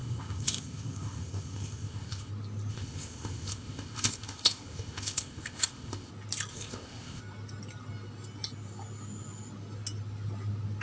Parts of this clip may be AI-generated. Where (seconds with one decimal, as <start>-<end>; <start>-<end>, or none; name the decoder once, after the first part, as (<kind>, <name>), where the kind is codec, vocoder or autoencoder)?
0.0-2.3 (codec, ZipCodec); 2.7-6.1; 6.5-7.2